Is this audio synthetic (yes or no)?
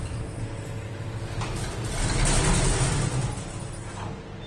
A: no